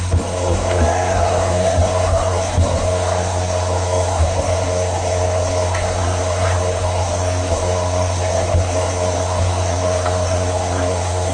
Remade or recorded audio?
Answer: remade